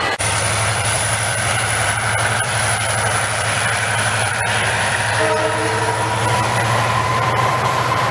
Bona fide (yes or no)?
no